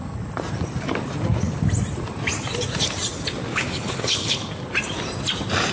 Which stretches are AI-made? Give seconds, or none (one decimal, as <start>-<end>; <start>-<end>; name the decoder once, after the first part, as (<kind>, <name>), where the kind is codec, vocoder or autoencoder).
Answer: 3.5-4.5 (codec, HILCodec)